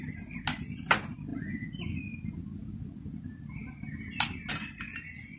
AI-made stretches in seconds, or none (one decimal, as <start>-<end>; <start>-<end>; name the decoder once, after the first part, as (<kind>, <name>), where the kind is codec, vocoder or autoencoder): none